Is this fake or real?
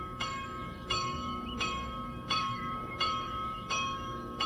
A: fake